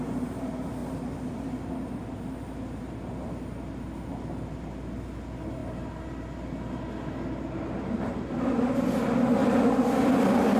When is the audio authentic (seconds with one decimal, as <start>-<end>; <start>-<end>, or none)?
0.0-9.4; 10.1-10.6